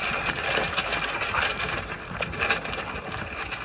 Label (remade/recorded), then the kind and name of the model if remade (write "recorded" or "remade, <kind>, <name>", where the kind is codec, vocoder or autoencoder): recorded